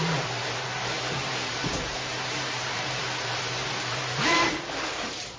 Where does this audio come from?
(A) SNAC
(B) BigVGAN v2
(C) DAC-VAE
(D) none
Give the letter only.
B